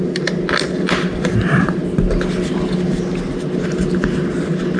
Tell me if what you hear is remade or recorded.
recorded